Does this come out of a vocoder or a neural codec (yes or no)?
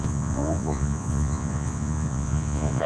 yes